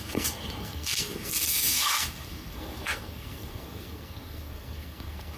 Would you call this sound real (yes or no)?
no